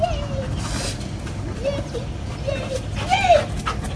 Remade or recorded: recorded